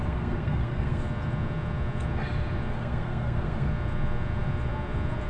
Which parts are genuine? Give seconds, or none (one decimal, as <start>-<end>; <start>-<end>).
1.0-2.7; 3.7-5.3